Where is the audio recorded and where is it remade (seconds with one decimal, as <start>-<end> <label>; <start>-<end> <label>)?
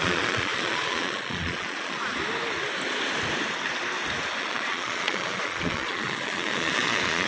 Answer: 0.0-2.0 remade; 2.0-4.4 recorded; 4.4-7.3 remade